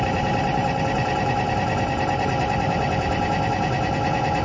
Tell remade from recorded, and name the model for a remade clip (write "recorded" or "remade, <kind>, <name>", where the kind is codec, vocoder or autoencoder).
remade, vocoder, BigVGAN v2